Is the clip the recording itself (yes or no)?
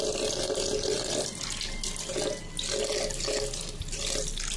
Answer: yes